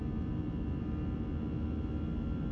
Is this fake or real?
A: real